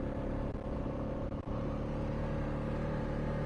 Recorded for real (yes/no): yes